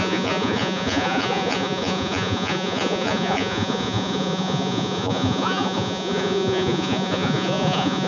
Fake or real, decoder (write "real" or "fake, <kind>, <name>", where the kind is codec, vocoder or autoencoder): fake, vocoder, Vocos